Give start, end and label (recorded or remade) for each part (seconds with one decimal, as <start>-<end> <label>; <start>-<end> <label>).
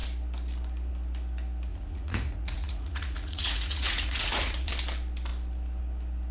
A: 0.0-1.7 recorded; 1.7-4.7 remade; 4.7-6.3 recorded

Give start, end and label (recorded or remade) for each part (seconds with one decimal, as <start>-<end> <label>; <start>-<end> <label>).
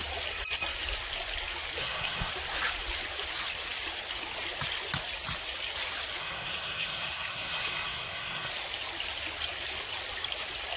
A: 0.0-1.8 recorded; 1.8-2.3 remade; 2.3-6.2 recorded; 6.2-8.5 remade; 8.5-10.8 recorded